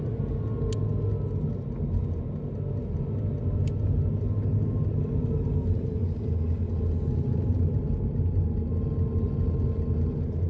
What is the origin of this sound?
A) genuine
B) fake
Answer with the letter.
A